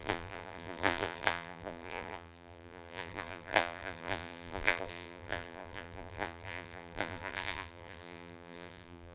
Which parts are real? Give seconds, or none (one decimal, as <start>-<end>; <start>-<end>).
none